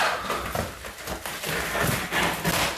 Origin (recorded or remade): recorded